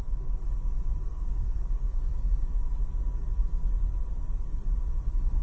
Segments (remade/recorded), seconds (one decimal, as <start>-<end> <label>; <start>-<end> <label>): 0.0-1.1 recorded; 1.1-1.7 remade; 1.7-5.4 recorded